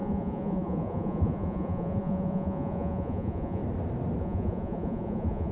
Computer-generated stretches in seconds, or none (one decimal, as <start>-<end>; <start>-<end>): 0.0-3.6; 4.2-5.5